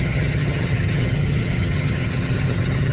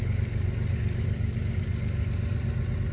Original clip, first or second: second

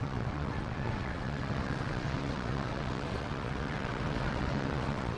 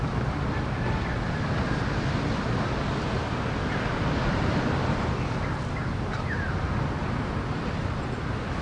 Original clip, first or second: second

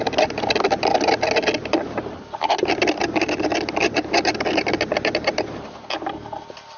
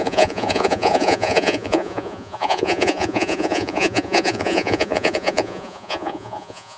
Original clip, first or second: first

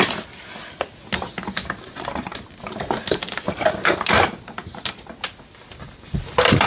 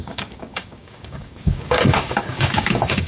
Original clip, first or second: first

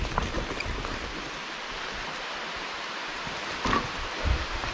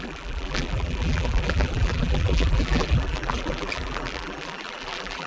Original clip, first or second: first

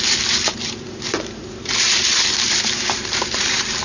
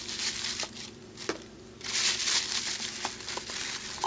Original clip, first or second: second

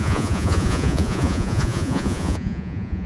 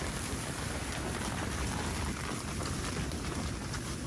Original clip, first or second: second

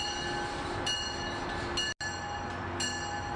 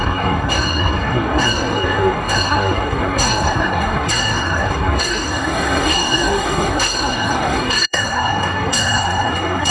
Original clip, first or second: first